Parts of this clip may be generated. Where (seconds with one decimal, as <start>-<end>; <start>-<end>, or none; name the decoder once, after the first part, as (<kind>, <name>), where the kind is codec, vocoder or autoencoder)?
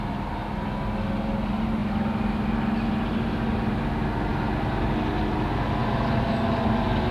none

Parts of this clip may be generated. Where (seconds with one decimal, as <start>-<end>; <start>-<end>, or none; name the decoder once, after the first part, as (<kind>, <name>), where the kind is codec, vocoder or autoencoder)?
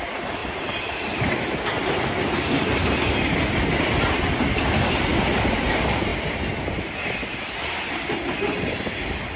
0.4-1.3 (vocoder, BigVGAN v2); 6.1-7.5